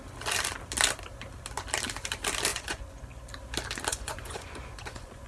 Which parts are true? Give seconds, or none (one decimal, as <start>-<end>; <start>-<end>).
0.0-2.5; 3.3-3.9